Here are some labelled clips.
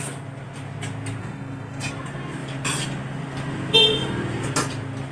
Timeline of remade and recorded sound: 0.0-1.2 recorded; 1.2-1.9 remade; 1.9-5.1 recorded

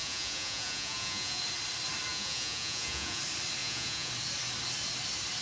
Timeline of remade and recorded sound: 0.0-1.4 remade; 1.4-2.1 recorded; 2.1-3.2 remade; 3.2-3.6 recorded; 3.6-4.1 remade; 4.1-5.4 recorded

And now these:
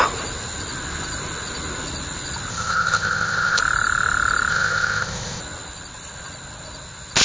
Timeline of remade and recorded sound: 0.0-2.5 recorded; 2.5-3.6 remade; 3.6-4.5 recorded; 4.5-5.4 remade; 5.4-7.2 recorded

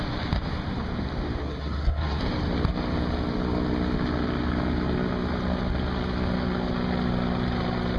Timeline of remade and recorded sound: 0.0-1.4 recorded; 1.4-2.2 remade; 2.2-8.0 recorded